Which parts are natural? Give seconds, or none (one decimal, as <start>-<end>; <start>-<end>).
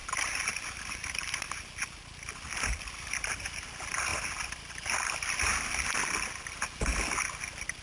0.0-7.8